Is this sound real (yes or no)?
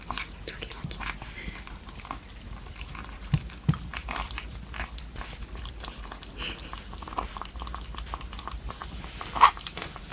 yes